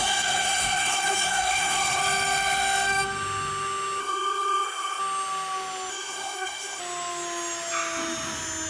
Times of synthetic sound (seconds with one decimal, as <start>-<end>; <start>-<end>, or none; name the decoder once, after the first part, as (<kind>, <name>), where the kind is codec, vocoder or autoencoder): 0.0-2.0 (codec, SNAC); 4.0-5.0; 5.9-6.8